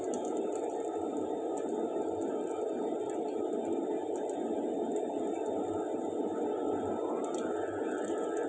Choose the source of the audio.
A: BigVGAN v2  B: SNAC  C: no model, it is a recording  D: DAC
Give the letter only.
C